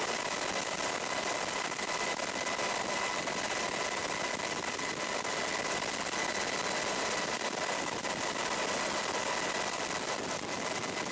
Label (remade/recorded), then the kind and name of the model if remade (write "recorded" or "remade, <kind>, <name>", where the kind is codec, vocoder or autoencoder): recorded